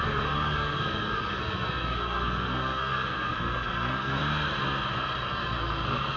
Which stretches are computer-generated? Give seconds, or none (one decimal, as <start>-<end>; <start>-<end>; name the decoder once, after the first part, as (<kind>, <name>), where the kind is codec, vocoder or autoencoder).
0.0-4.2 (codec, SNAC); 5.3-6.2